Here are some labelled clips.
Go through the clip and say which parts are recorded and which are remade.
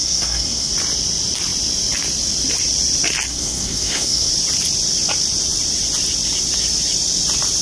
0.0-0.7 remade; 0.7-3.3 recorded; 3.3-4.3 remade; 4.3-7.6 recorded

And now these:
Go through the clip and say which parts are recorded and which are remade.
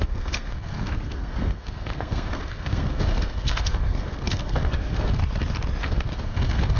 0.0-5.2 remade; 5.2-5.8 recorded; 5.8-6.8 remade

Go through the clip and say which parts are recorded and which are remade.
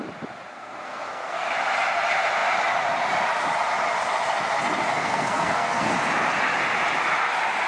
0.0-0.5 recorded; 0.5-1.5 remade; 1.5-4.9 recorded; 4.9-5.9 remade; 5.9-7.7 recorded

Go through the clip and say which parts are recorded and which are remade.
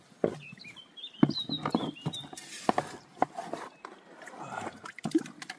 0.0-5.6 recorded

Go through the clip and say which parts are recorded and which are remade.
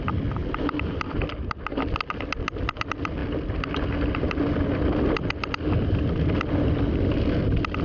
0.0-7.8 recorded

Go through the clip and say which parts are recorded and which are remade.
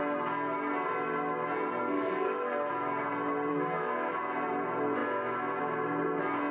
0.0-1.8 recorded; 1.8-2.7 remade; 2.7-3.5 recorded; 3.5-4.1 remade; 4.1-6.5 recorded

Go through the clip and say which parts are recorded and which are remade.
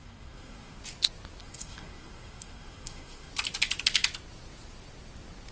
0.0-0.8 remade; 0.8-1.4 recorded; 1.4-3.3 remade; 3.3-5.5 recorded